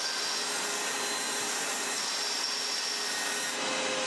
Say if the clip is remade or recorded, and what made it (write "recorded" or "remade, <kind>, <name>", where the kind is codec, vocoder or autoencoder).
recorded